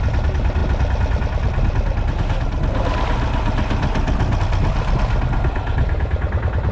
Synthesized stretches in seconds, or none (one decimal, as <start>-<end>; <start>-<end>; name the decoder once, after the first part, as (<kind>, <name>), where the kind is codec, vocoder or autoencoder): none